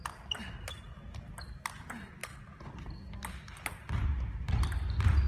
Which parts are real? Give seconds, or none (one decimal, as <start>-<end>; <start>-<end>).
0.0-5.3